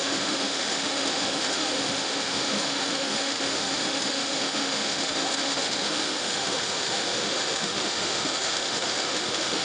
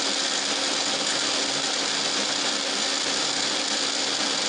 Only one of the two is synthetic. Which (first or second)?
first